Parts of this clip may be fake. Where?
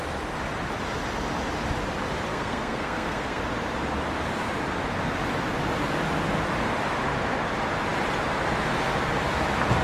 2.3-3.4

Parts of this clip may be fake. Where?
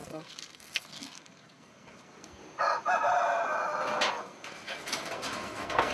0.0-2.4; 4.1-5.9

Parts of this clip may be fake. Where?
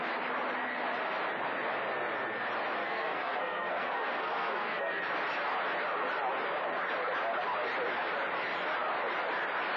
2.8-5.0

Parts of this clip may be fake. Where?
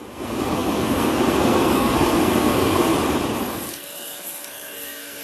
0.0-2.9; 3.7-5.2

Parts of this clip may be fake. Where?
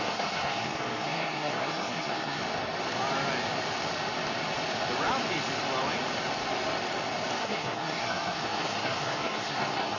0.0-2.4; 7.4-10.0